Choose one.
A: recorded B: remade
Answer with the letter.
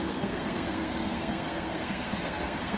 B